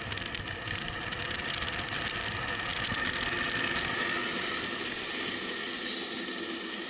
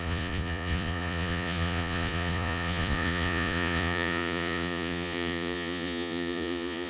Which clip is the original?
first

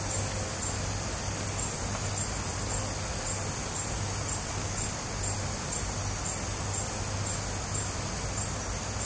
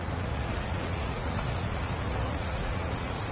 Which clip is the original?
first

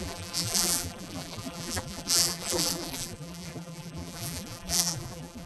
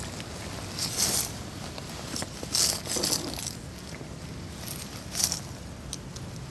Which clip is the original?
second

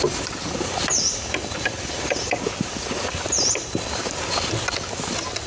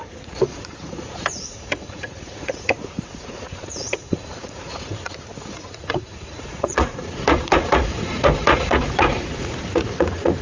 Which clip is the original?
first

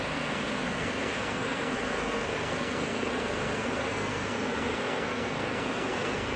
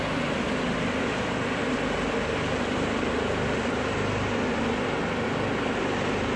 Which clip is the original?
second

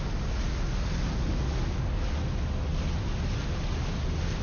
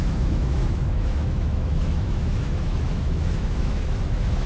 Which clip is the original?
first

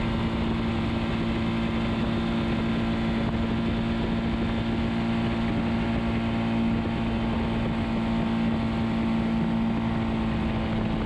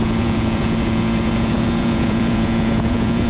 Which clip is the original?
first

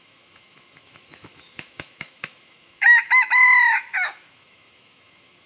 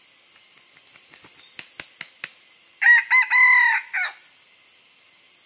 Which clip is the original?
second